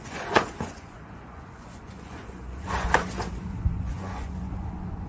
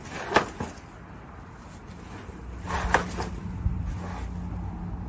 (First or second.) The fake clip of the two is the first